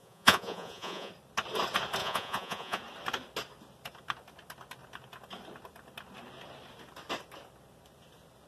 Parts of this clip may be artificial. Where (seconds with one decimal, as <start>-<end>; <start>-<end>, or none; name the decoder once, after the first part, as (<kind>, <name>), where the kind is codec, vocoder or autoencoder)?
0.0-1.1 (vocoder, Vocos); 2.0-2.8